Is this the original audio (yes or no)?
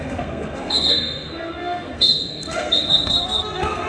no